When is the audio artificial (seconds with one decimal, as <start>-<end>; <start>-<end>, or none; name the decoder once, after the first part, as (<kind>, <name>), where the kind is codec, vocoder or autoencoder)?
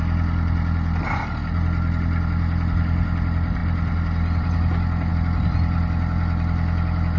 none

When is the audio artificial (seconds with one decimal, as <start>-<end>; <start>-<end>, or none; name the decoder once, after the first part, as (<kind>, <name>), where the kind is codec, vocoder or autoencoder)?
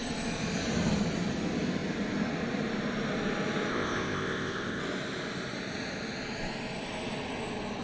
3.7-4.8 (codec, ZipCodec)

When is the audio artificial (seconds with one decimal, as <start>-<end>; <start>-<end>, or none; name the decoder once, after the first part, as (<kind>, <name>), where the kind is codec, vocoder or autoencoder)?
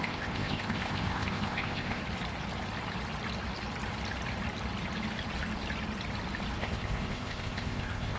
0.0-2.0 (codec, ZipCodec); 6.6-8.2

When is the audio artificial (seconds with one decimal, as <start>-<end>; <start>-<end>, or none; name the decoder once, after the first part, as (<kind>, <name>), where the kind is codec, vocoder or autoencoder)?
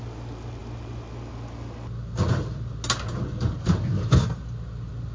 none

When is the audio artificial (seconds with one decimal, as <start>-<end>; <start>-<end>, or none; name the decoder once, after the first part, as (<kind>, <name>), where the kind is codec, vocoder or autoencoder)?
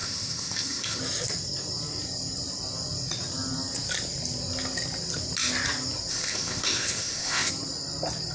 0.0-1.0 (codec, ZipCodec); 6.1-7.5